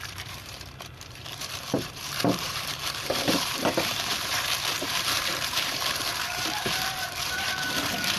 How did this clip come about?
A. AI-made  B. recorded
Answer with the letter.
A